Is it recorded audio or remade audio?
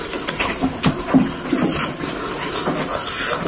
recorded